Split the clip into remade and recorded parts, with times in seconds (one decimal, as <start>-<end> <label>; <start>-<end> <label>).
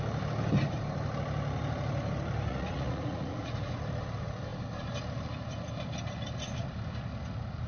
0.0-2.5 recorded; 2.5-3.8 remade; 3.8-7.7 recorded